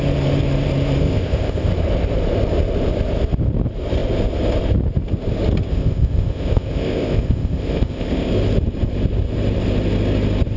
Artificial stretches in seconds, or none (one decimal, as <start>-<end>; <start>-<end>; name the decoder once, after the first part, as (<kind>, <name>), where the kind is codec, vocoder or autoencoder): 1.0-1.7 (codec, ZipCodec); 5.7-8.3